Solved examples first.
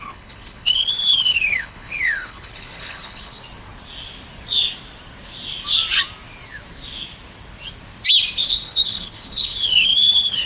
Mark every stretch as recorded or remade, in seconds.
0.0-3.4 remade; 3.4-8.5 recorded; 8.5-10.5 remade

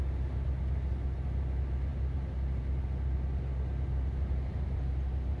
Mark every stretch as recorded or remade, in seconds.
0.0-5.4 recorded